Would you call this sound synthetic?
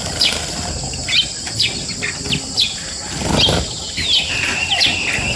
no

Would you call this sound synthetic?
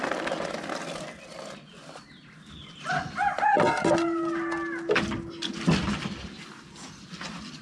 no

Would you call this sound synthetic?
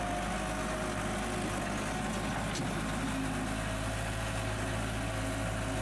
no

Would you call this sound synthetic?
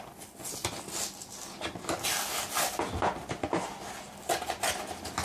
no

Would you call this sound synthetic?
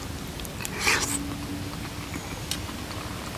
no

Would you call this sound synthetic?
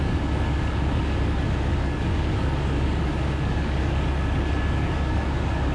yes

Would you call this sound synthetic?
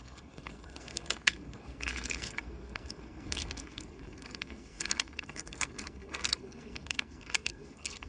yes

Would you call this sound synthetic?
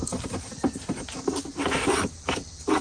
no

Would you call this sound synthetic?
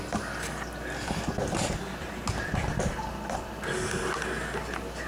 no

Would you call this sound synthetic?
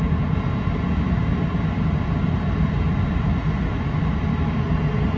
no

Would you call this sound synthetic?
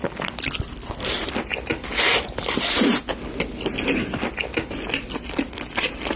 no